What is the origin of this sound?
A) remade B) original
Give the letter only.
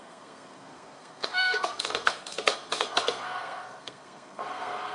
A